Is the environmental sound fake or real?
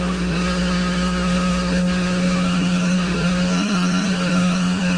fake